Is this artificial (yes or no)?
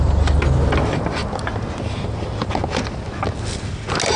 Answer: no